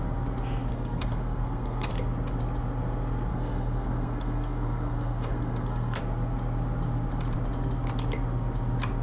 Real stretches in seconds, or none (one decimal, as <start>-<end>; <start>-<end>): 0.0-0.7; 1.9-3.3; 6.0-9.0